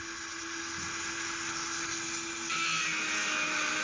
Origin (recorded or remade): recorded